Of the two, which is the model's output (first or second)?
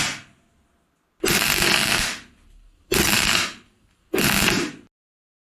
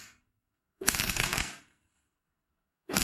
second